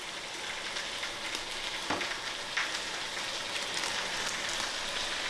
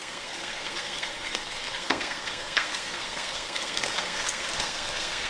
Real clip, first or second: first